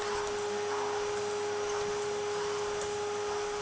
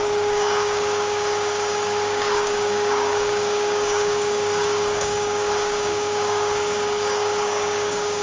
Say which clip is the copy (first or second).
second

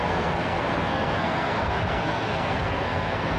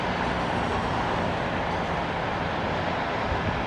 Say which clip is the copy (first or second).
first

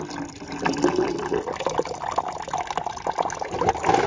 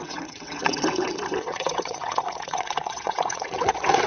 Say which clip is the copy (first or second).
second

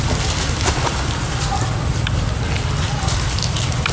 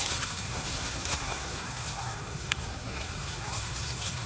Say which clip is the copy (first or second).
second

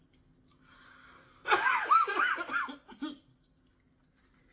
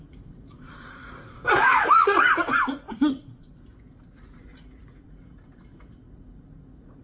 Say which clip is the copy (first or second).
second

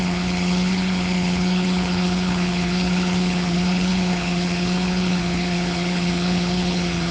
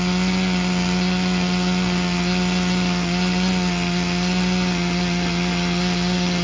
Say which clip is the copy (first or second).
first